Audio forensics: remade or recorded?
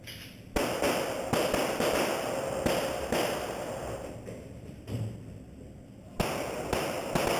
recorded